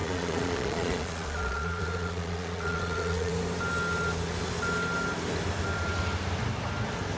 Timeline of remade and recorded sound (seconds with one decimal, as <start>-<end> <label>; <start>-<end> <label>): 0.0-3.3 remade; 3.3-7.2 recorded